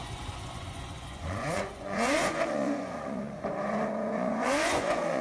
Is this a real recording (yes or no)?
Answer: no